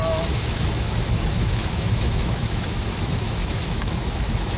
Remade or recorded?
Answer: remade